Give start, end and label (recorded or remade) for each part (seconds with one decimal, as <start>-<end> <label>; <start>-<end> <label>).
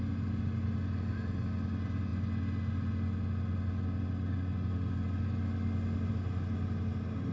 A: 0.0-7.3 recorded